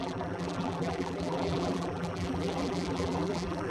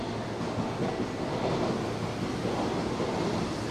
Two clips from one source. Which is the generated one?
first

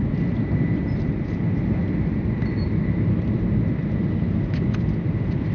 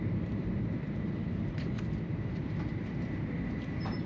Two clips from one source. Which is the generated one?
second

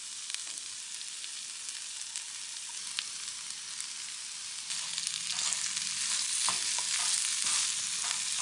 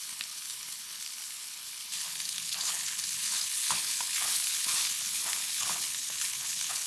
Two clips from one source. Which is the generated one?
second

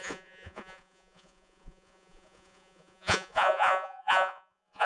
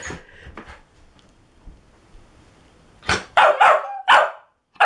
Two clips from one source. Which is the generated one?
first